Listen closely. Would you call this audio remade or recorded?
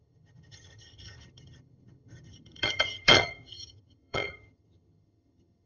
remade